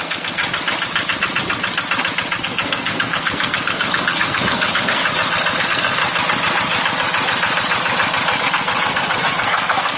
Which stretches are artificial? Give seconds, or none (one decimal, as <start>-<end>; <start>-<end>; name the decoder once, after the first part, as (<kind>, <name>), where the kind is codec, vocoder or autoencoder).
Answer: 0.0-0.4 (codec, SNAC); 2.4-5.0; 5.6-6.0; 8.4-10.0